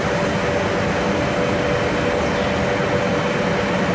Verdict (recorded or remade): recorded